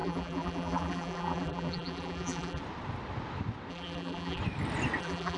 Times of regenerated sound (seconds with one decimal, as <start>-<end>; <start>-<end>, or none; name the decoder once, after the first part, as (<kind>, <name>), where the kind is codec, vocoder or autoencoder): 0.0-2.6 (vocoder, BigVGAN v2); 3.7-4.4; 5.0-5.4